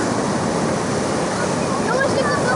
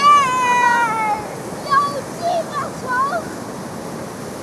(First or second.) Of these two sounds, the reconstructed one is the first